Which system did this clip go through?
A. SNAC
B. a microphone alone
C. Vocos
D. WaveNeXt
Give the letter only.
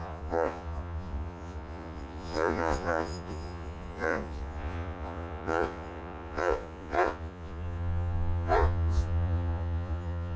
C